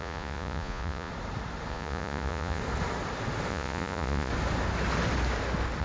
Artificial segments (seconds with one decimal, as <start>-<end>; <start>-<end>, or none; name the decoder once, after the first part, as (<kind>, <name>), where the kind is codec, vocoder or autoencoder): 0.0-1.1 (vocoder, Vocos); 1.7-2.6; 3.5-4.3